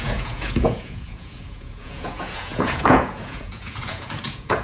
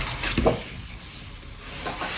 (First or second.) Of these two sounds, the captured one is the second